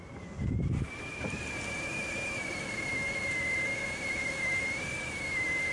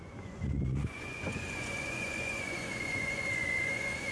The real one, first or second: first